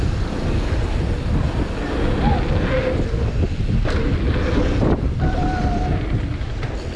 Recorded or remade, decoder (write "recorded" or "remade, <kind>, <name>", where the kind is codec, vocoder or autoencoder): recorded